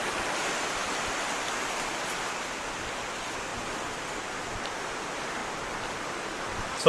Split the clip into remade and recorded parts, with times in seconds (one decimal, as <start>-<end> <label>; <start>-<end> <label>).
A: 0.0-6.9 recorded